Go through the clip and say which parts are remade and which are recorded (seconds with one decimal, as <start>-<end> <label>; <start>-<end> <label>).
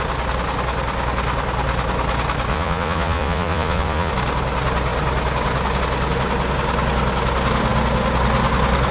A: 0.0-2.5 recorded; 2.5-4.1 remade; 4.1-8.9 recorded